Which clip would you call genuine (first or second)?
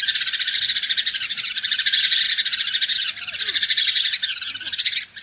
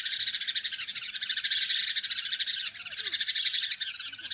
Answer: second